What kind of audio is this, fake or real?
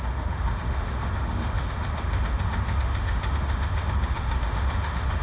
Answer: fake